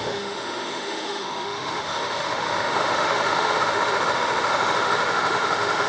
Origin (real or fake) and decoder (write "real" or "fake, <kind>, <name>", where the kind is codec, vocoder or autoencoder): fake, autoencoder, DAC-VAE